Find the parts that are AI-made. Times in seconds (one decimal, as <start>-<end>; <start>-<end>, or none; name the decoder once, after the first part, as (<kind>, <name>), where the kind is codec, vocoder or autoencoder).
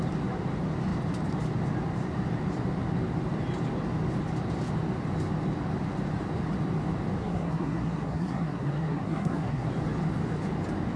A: 7.2-9.7 (codec, SNAC)